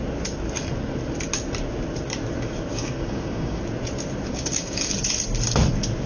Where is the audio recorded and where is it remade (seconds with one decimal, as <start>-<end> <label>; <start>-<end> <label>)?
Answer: 0.0-2.7 recorded; 2.7-3.6 remade; 3.6-4.3 recorded; 4.3-4.9 remade; 4.9-6.1 recorded